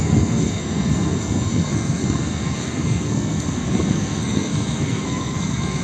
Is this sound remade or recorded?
remade